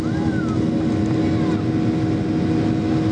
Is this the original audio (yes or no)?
yes